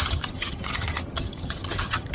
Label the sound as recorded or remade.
remade